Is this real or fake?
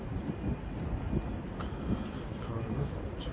real